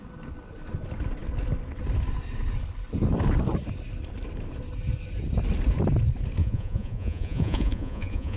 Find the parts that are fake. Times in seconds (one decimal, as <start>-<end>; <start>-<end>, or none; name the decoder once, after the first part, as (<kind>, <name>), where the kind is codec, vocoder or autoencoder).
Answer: 6.4-8.4 (vocoder, Vocos)